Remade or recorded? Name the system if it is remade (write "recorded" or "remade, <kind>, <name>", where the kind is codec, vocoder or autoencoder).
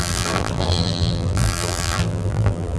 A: remade, vocoder, BigVGAN v2